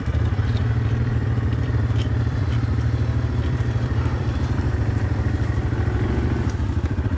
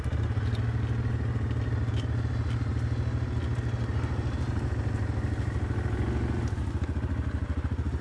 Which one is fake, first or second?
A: first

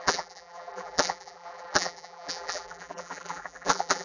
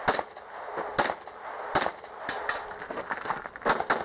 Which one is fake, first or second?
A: first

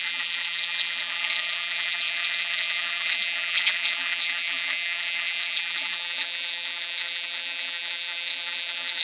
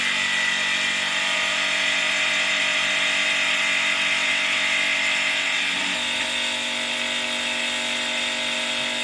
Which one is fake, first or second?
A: first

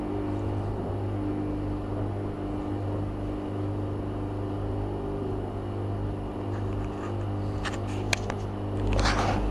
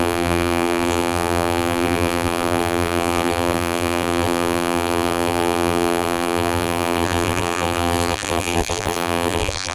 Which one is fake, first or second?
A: second